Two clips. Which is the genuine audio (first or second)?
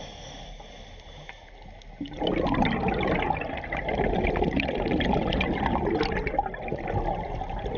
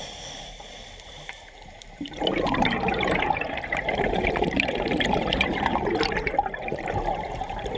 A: first